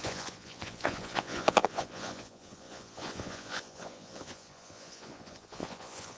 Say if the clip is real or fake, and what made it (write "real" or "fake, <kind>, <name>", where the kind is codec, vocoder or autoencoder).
fake, vocoder, Vocos